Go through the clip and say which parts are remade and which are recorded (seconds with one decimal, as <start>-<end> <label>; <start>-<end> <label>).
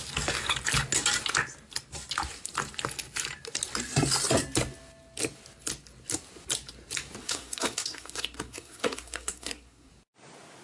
0.0-7.2 recorded; 7.2-9.9 remade; 9.9-10.6 recorded